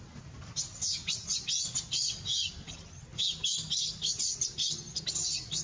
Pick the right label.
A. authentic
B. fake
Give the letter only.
A